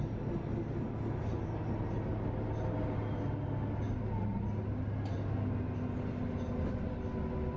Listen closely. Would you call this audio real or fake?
real